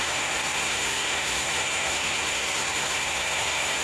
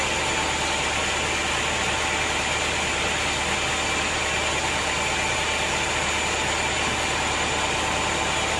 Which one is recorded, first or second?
second